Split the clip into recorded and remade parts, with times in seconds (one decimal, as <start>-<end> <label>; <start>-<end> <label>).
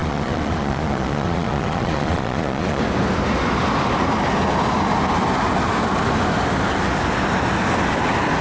0.0-2.8 remade; 2.8-8.4 recorded